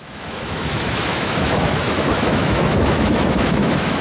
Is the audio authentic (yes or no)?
no